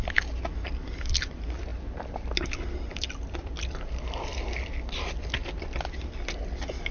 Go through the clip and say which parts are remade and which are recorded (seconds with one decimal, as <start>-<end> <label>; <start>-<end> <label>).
0.0-6.9 recorded